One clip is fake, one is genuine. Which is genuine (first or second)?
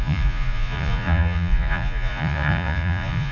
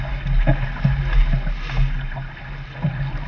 second